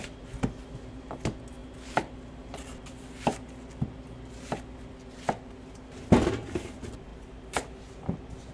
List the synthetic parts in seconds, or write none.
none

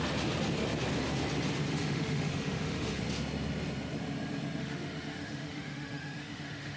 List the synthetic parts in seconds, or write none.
1.7-3.0 (autoencoder, DAC-VAE); 4.6-6.8

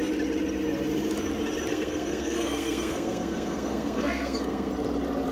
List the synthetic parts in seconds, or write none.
1.7-4.7 (codec, SNAC)